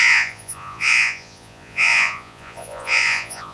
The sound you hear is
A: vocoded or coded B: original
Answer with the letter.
A